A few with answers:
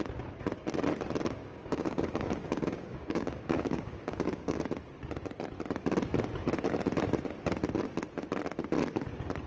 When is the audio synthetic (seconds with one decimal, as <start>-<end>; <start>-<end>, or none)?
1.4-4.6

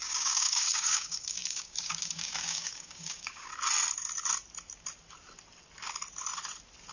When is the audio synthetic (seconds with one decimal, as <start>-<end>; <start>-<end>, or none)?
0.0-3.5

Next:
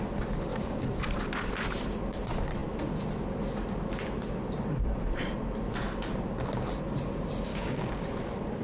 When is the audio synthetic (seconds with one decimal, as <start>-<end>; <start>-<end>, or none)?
0.5-1.0; 7.5-8.0